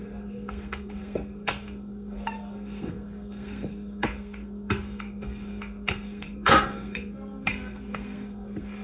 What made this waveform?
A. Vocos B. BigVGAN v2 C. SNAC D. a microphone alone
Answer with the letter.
C